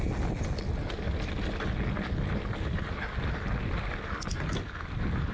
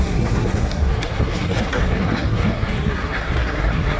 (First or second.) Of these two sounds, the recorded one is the first